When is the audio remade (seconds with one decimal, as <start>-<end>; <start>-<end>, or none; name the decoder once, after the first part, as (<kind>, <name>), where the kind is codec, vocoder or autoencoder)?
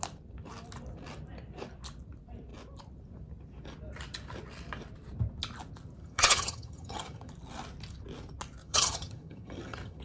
6.0-7.3 (vocoder, HiFi-GAN); 8.6-10.0